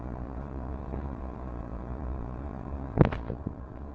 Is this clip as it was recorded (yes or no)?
no